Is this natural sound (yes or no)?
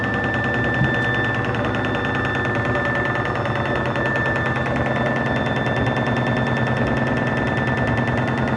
yes